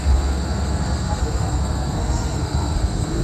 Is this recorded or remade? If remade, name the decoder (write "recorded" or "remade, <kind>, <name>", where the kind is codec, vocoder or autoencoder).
remade, codec, SNAC